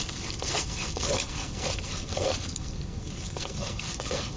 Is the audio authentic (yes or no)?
no